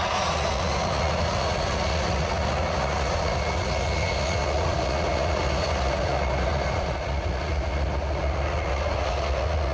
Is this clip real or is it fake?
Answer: fake